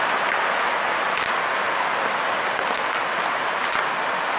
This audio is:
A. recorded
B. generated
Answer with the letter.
A